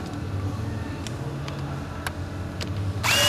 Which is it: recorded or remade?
recorded